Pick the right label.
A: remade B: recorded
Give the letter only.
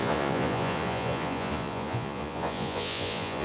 A